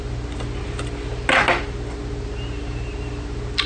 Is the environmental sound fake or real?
real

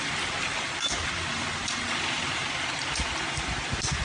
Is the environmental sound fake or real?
real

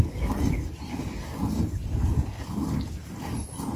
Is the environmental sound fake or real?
real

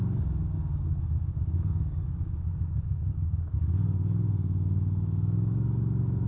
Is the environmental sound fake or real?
fake